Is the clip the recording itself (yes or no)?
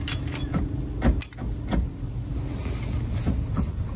yes